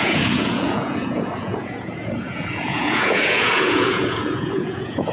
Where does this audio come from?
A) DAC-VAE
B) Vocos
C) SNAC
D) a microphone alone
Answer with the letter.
B